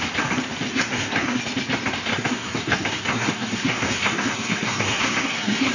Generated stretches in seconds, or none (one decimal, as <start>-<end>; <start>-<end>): 0.7-1.4; 2.1-5.7